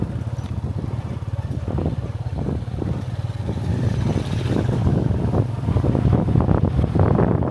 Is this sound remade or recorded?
recorded